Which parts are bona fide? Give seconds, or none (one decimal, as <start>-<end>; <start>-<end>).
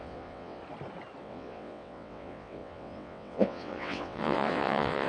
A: 0.6-1.2